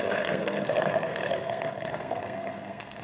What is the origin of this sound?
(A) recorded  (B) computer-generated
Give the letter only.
B